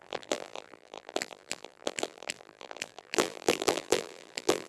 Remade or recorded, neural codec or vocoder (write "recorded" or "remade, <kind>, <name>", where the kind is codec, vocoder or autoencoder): remade, vocoder, BigVGAN v2